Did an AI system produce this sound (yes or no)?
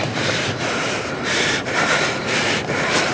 yes